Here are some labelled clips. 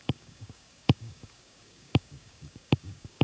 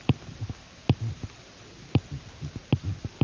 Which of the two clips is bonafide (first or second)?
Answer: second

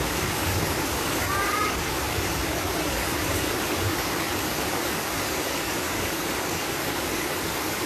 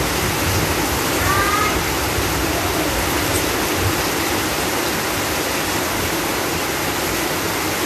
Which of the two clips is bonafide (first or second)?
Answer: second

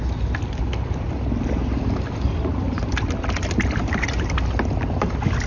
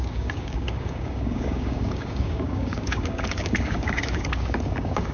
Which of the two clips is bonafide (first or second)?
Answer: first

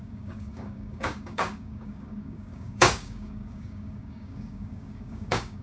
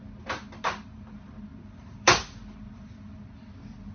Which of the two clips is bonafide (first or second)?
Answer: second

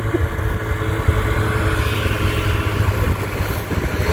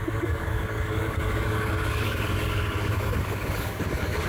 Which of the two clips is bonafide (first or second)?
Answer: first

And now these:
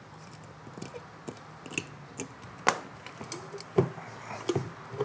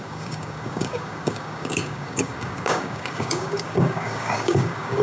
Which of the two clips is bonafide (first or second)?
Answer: first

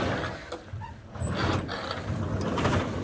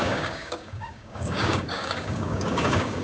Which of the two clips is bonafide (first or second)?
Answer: first